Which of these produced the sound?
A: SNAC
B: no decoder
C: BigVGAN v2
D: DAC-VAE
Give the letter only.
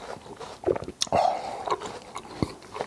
B